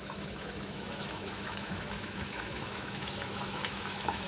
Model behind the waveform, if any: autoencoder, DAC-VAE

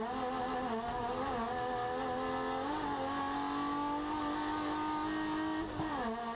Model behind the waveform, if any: none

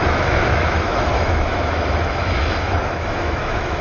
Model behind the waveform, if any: autoencoder, DAC-VAE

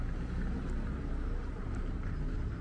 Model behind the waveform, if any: none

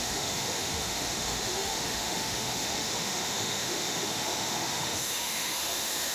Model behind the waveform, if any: autoencoder, DAC-VAE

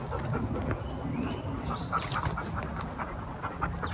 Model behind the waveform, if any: none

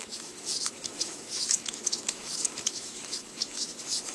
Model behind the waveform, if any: autoencoder, DAC-VAE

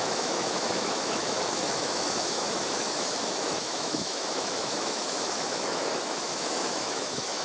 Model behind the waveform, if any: autoencoder, DAC-VAE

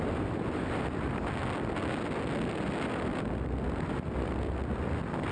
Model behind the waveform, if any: none